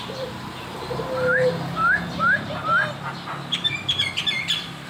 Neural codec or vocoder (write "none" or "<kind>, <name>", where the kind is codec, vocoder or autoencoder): vocoder, BigVGAN v2